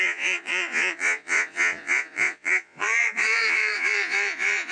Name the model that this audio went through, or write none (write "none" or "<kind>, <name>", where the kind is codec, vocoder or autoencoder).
vocoder, Vocos